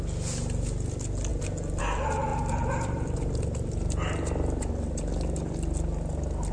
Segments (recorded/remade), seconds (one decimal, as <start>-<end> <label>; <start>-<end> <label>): 0.0-1.3 recorded; 1.3-1.8 remade; 1.8-2.3 recorded; 2.3-4.7 remade; 4.7-6.5 recorded